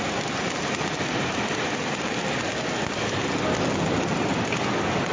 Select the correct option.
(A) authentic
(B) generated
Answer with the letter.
A